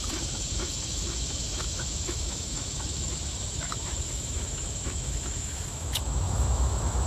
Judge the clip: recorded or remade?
remade